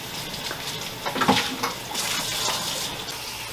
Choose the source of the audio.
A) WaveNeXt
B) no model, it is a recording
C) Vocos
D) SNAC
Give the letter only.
B